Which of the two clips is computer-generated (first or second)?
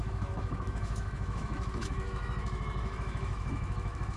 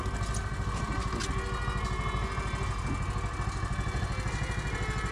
first